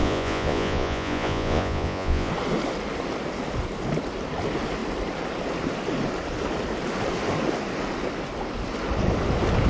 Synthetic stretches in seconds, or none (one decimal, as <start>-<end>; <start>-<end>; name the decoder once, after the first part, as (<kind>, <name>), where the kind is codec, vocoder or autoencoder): 0.0-2.3 (vocoder, Vocos)